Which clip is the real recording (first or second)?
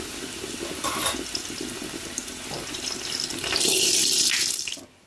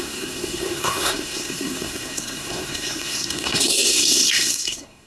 first